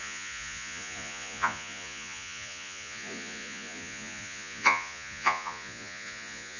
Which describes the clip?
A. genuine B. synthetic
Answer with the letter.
B